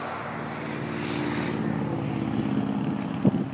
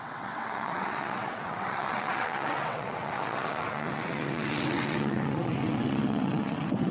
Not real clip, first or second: second